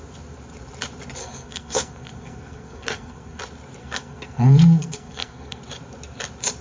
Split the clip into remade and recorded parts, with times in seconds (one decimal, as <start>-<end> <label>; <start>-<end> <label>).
0.0-1.2 recorded; 1.2-3.4 remade; 3.4-3.8 recorded; 3.8-5.6 remade; 5.6-6.6 recorded